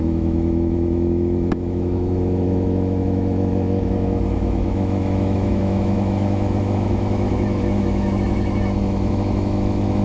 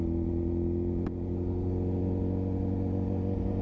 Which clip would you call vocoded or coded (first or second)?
first